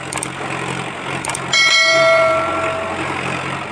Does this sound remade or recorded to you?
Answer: remade